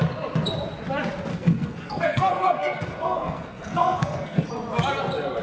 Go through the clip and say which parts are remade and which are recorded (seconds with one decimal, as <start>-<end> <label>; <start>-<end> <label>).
0.0-1.3 recorded; 1.3-4.5 remade; 4.5-5.4 recorded